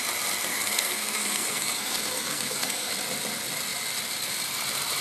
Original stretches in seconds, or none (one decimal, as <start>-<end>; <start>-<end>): 0.0-0.5; 2.9-5.0